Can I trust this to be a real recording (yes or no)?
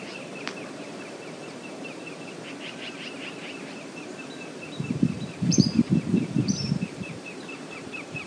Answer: no